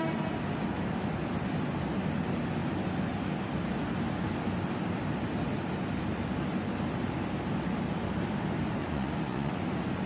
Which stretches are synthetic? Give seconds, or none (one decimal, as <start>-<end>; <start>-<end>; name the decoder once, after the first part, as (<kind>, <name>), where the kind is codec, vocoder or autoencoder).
8.8-9.5 (vocoder, Vocos)